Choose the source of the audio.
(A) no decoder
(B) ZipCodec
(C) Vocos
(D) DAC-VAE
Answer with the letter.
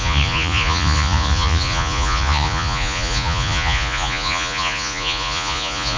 C